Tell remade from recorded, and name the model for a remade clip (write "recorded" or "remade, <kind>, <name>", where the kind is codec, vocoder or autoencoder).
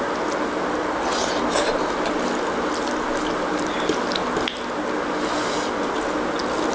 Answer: recorded